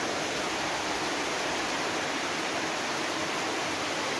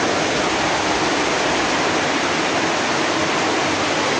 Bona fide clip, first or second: second